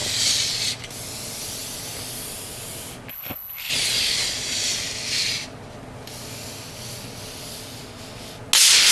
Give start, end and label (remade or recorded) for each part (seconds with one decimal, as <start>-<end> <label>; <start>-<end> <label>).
0.0-3.1 recorded; 3.1-3.7 remade; 3.7-8.9 recorded